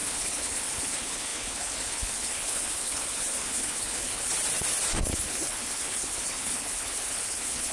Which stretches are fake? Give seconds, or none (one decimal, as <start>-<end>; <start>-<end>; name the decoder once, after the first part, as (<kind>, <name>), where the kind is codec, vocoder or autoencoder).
0.0-4.3 (codec, HILCodec); 5.0-7.7